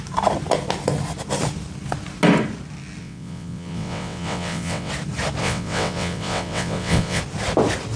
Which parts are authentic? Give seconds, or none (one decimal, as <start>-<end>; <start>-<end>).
0.0-3.0; 4.9-5.4; 7.2-8.0